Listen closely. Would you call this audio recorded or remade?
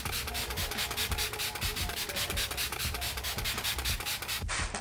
remade